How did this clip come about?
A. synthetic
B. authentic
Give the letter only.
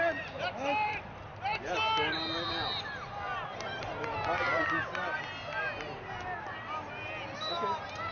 B